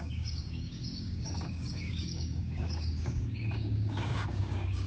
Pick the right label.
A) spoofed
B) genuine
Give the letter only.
A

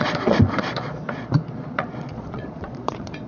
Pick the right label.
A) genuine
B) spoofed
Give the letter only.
B